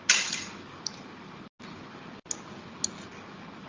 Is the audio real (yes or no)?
yes